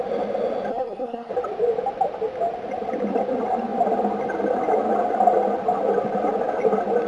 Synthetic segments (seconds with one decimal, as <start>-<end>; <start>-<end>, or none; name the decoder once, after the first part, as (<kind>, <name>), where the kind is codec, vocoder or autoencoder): 0.7-1.3 (codec, SNAC)